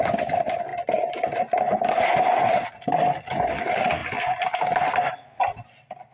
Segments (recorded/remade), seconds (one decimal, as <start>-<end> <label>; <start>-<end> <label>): 0.0-6.1 recorded